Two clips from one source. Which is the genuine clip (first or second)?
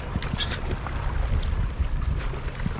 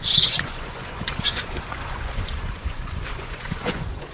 first